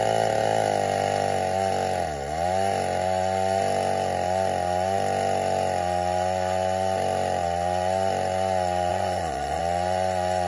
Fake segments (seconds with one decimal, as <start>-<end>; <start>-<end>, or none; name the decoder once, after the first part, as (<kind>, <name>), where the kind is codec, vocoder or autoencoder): 8.9-9.6 (vocoder, Vocos)